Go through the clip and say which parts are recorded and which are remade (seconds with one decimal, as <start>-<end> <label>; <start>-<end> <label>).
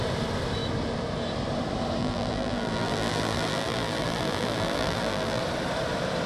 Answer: 0.0-2.0 recorded; 2.0-5.4 remade; 5.4-6.3 recorded